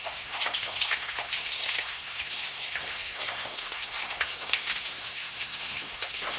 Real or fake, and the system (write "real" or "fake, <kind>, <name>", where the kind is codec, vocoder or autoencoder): fake, codec, SNAC